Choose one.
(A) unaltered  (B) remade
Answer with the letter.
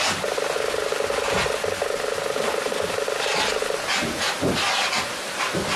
A